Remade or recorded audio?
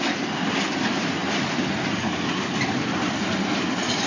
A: recorded